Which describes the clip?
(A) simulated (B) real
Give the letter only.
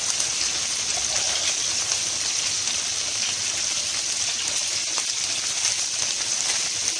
B